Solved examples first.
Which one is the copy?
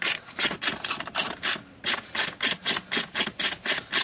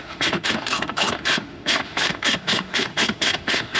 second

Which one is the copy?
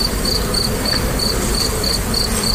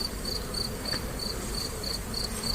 second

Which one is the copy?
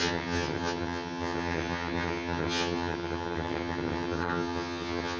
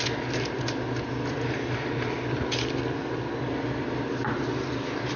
first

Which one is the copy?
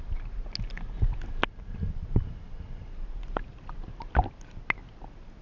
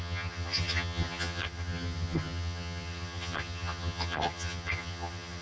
second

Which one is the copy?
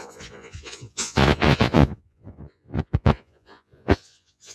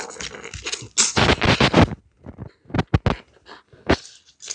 first